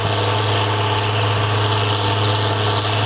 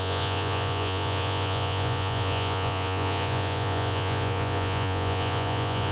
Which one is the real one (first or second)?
first